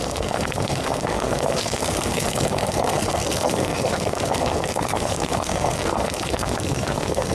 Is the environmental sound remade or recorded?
remade